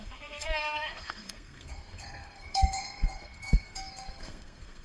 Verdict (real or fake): fake